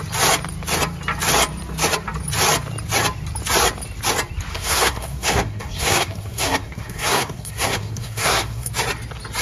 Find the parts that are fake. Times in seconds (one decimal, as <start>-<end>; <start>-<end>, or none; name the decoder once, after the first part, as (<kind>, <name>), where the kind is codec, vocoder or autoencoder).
4.5-8.7 (codec, SNAC)